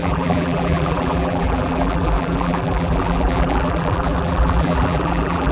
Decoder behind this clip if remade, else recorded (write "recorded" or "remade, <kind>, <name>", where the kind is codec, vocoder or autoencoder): remade, vocoder, BigVGAN v2